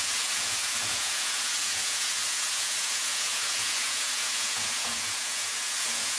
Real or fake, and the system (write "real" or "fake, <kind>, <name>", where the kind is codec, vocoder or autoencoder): fake, vocoder, Vocos